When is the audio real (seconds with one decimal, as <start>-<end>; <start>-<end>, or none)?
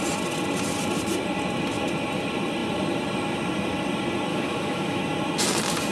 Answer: 0.0-4.3; 5.0-5.9